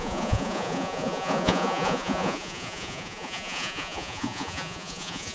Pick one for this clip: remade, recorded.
remade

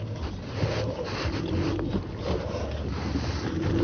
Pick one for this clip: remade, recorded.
recorded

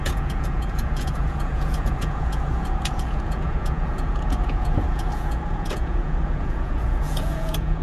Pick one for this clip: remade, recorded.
remade